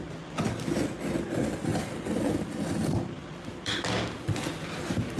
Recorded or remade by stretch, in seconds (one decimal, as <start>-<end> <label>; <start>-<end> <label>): 0.0-5.2 recorded